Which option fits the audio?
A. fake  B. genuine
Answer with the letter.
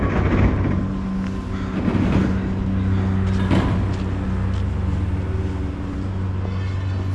B